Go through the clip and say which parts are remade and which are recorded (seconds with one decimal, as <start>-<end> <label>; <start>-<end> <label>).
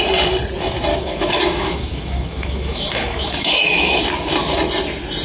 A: 0.0-0.9 recorded; 0.9-4.0 remade; 4.0-5.2 recorded